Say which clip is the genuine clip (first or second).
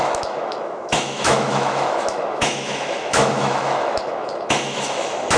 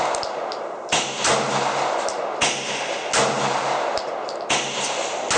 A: second